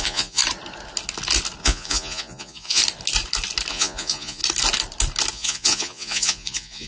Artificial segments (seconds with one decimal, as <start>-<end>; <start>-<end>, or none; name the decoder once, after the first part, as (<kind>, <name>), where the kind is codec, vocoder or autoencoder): 0.0-0.4 (vocoder, Vocos); 1.6-2.8; 3.7-4.4; 5.3-6.9